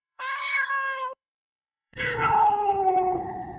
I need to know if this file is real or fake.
fake